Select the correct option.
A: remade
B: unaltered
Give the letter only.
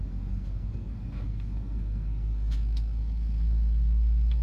A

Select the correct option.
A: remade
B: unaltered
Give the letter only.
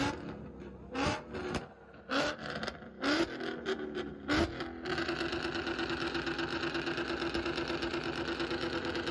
B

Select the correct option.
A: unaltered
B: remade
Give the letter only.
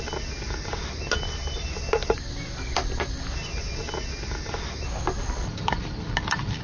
A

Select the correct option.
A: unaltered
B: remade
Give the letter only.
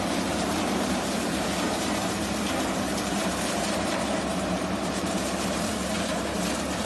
B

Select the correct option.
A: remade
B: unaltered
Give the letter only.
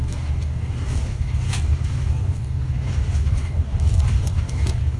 A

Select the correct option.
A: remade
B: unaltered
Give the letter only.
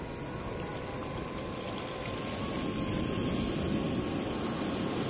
B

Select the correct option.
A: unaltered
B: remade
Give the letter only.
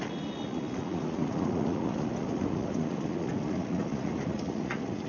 B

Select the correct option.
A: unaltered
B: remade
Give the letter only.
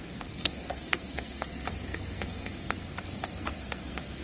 B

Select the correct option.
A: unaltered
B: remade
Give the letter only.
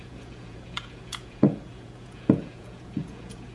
B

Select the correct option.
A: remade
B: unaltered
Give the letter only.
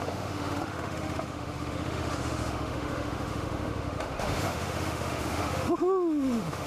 A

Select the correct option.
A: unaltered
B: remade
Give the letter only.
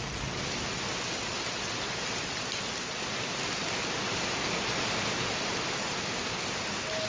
A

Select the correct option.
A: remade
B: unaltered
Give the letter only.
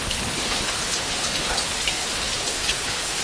A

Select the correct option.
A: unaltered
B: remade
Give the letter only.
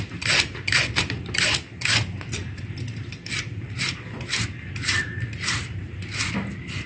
A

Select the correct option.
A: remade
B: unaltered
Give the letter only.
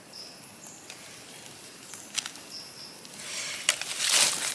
B